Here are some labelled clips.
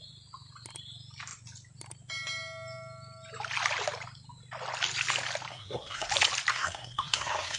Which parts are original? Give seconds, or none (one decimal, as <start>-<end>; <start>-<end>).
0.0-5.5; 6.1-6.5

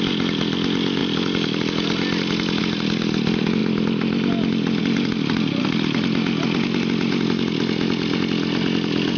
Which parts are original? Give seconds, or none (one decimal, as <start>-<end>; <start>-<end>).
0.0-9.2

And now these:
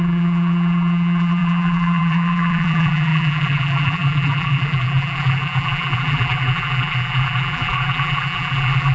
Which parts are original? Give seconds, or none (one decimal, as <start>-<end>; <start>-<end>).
none